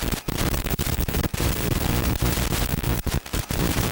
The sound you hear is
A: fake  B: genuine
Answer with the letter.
A